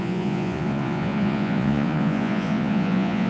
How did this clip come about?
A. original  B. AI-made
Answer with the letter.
B